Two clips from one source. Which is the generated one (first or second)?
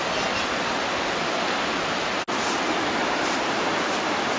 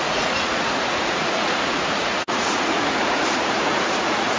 second